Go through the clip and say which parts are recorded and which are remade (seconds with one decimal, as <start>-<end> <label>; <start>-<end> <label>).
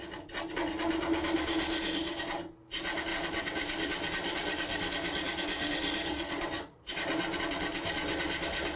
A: 0.0-3.1 recorded; 3.1-7.4 remade; 7.4-8.8 recorded